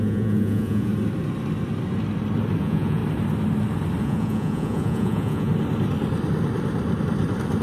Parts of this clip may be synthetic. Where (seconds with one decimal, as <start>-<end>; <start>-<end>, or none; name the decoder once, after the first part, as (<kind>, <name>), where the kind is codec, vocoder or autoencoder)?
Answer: 0.0-0.9 (vocoder, Vocos); 2.6-3.0; 4.0-5.5